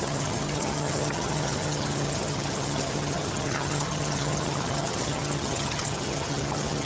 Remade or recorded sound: remade